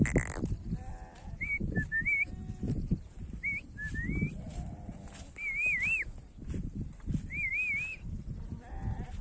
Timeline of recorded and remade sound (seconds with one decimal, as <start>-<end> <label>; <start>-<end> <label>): 0.0-9.2 recorded